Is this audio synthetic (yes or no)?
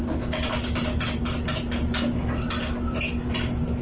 no